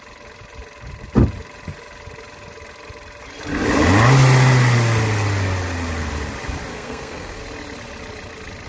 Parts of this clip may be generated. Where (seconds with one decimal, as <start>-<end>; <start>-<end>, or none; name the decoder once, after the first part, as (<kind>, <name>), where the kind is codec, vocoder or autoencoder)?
6.7-7.4 (codec, SNAC)